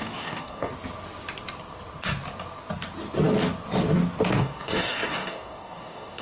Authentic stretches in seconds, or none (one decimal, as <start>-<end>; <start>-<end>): 0.7-4.4